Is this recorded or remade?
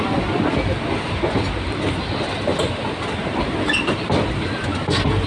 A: recorded